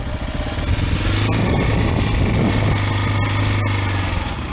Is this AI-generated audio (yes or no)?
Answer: no